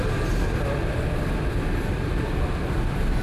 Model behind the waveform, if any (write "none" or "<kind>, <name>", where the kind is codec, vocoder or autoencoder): none